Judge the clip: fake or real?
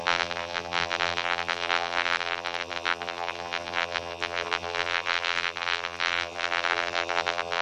fake